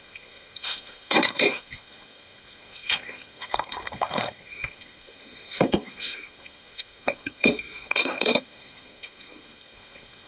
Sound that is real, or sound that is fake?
fake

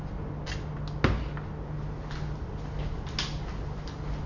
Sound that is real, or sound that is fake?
real